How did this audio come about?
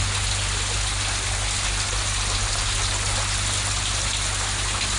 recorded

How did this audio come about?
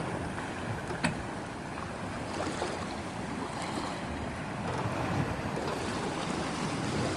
recorded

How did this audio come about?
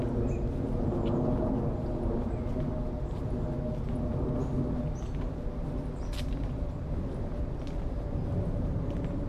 recorded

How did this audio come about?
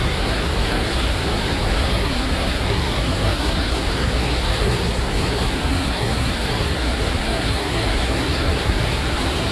remade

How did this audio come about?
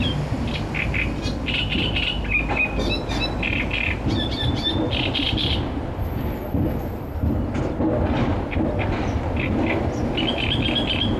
recorded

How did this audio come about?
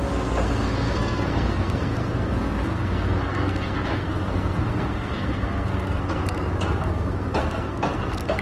remade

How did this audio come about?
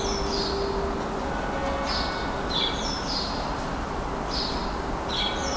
recorded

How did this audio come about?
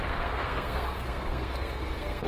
remade